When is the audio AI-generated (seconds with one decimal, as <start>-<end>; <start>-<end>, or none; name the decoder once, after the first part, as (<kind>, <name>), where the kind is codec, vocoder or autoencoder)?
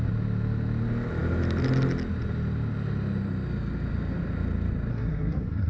4.9-5.7 (codec, SNAC)